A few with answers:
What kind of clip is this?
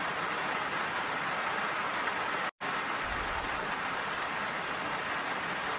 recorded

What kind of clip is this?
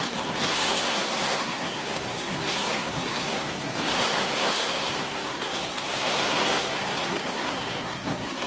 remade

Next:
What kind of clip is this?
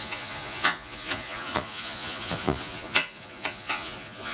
remade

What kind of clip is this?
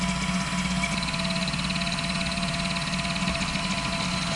recorded